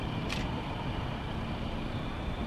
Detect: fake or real fake